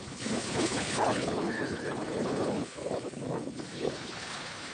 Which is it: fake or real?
fake